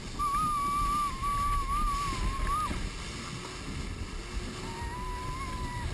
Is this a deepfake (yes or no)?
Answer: no